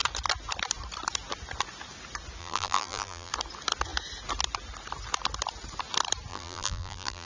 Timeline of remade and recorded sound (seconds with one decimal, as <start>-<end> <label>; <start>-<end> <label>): 0.0-2.4 recorded; 2.4-3.3 remade; 3.3-6.3 recorded; 6.3-7.3 remade